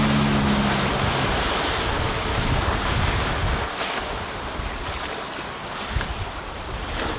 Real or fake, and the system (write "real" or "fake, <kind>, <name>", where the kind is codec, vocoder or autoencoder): real